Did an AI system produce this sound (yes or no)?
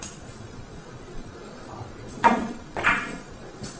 yes